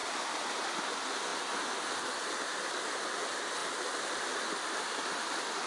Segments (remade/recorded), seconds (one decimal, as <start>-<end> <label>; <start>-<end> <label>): 0.0-0.7 remade; 0.7-3.6 recorded; 3.6-4.8 remade; 4.8-5.7 recorded